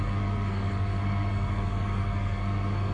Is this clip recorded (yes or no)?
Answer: no